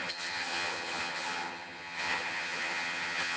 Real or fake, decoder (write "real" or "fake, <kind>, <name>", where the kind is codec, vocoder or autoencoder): fake, vocoder, HiFi-GAN